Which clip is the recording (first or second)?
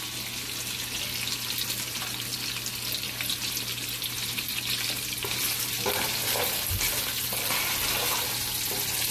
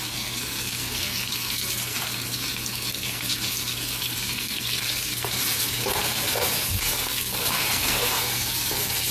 first